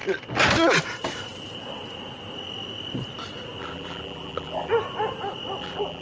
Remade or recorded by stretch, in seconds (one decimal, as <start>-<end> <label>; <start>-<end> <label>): 0.0-3.6 recorded; 3.6-4.7 remade; 4.7-5.6 recorded; 5.6-6.0 remade